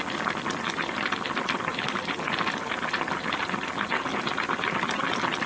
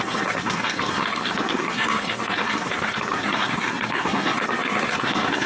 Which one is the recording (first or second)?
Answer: first